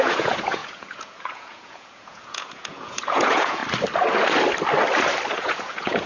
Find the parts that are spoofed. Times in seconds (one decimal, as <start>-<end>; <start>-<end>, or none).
0.0-3.6; 5.3-6.1